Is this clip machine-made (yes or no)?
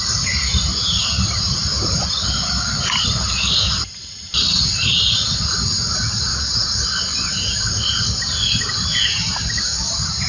no